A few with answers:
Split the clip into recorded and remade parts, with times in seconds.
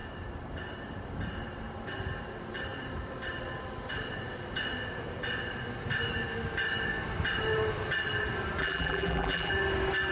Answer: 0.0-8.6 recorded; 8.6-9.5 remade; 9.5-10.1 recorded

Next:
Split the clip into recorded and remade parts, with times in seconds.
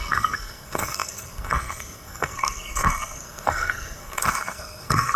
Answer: 0.0-5.2 remade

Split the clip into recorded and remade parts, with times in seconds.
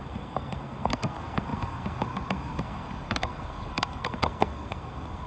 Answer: 0.0-5.3 remade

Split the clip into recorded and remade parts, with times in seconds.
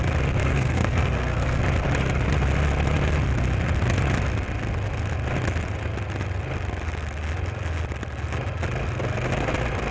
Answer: 0.0-0.5 recorded; 0.5-1.6 remade; 1.6-9.9 recorded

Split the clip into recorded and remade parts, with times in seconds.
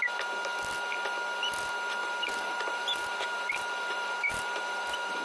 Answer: 0.0-2.0 recorded; 2.0-5.2 remade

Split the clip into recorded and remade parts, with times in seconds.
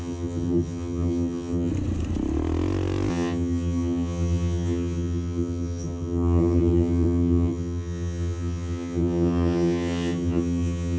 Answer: 0.0-1.7 remade; 1.7-3.1 recorded; 3.1-11.0 remade